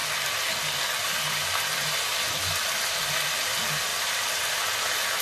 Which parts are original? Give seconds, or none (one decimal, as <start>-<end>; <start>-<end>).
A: 0.0-3.9; 4.6-5.2